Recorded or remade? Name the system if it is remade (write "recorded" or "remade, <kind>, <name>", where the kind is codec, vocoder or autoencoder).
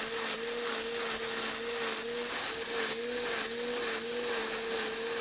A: recorded